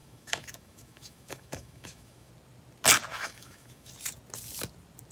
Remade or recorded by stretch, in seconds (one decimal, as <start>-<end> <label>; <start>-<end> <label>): 0.0-2.3 remade; 2.3-3.1 recorded; 3.1-3.9 remade; 3.9-5.1 recorded